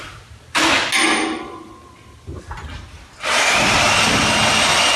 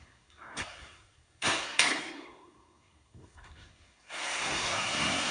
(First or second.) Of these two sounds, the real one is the first